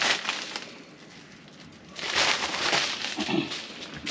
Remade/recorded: recorded